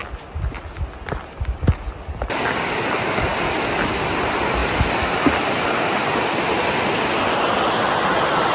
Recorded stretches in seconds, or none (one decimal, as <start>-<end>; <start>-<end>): 0.0-4.6; 5.2-8.5